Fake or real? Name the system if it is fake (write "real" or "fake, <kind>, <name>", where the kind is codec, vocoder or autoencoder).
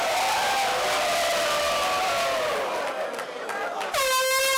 real